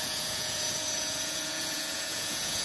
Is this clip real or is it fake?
fake